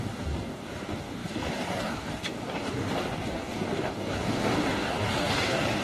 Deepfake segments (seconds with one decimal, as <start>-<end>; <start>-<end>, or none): 0.0-5.8